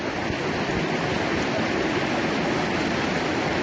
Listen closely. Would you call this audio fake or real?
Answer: real